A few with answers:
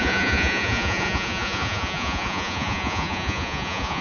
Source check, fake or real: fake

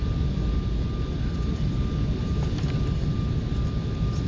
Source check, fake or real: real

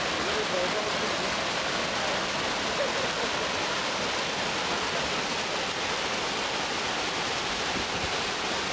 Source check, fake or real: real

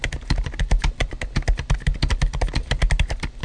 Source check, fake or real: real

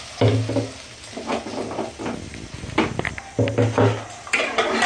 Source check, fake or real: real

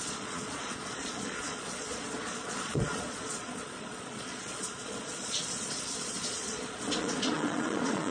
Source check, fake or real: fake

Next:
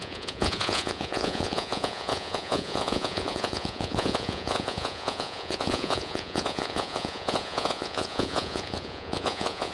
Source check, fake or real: fake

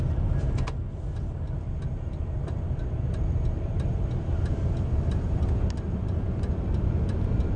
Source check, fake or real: real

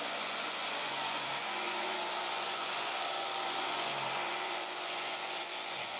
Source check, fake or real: fake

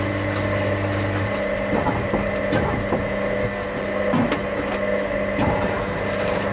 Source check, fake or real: real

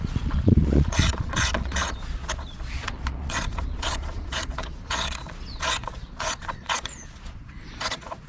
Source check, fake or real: fake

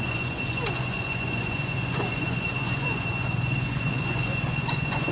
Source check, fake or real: fake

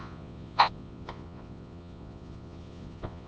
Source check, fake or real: fake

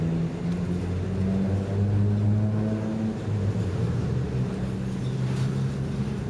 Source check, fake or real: real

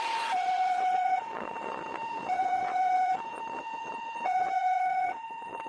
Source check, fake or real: fake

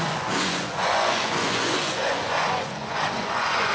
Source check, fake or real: fake